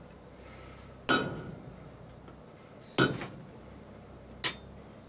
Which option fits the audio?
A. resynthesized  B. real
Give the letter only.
B